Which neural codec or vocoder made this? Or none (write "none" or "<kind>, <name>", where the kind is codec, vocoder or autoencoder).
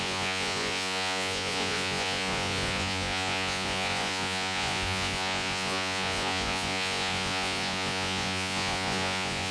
vocoder, Vocos